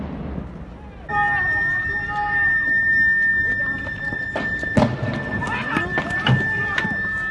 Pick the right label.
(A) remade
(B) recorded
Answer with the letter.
B